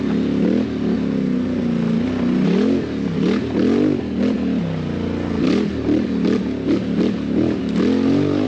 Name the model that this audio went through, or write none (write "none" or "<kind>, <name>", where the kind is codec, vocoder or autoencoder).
none